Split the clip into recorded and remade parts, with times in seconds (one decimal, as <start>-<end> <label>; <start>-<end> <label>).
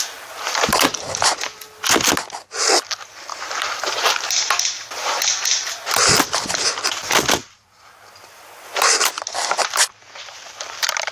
0.0-3.3 recorded; 3.3-4.6 remade; 4.6-11.1 recorded